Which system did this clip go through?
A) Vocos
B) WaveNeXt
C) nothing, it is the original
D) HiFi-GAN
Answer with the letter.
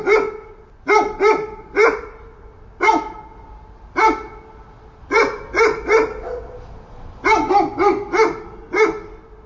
C